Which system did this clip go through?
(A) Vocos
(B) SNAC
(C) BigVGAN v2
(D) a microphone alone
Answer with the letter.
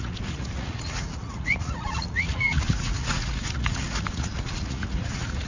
A